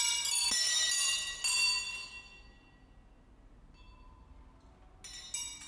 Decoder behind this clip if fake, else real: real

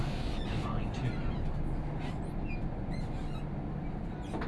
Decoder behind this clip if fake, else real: real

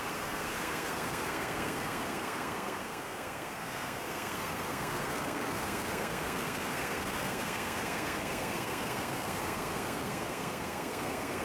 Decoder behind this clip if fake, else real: fake, codec, SNAC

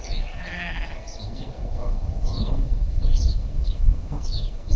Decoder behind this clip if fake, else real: fake, codec, SNAC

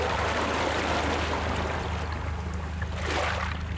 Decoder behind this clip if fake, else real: real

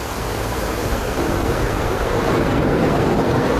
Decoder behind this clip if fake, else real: fake, codec, SNAC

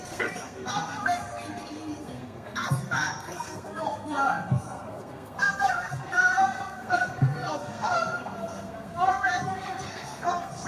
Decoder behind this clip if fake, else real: fake, codec, SNAC